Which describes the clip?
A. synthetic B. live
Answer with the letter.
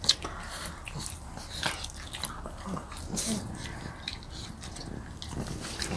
B